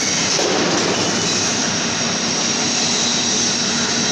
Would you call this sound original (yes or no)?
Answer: yes